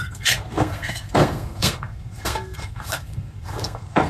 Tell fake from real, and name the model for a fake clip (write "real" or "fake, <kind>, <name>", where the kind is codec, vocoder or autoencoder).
fake, codec, SNAC